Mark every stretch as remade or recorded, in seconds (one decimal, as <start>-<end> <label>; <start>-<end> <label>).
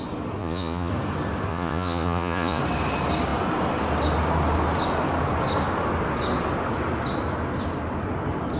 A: 0.0-0.4 recorded; 0.4-0.9 remade; 0.9-1.5 recorded; 1.5-2.6 remade; 2.6-8.6 recorded